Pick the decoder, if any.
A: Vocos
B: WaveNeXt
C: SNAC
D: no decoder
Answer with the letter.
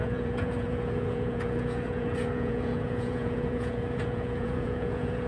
A